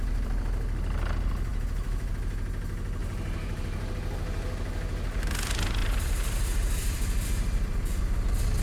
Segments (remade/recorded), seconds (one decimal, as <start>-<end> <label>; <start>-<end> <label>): 0.0-1.5 recorded; 1.5-2.1 remade; 2.1-3.0 recorded; 3.0-3.9 remade; 3.9-5.8 recorded; 5.8-8.0 remade; 8.0-8.6 recorded